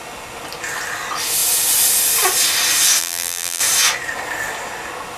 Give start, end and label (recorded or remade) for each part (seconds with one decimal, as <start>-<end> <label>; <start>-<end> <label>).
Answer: 0.0-3.0 recorded; 3.0-3.6 remade; 3.6-5.2 recorded